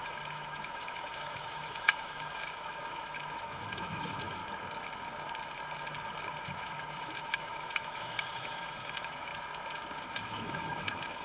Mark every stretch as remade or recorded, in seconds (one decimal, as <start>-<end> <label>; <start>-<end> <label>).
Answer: 0.0-4.4 remade; 4.4-6.4 recorded; 6.4-9.3 remade; 9.3-10.0 recorded; 10.0-11.2 remade